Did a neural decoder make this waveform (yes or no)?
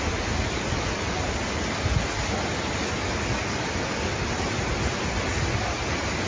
no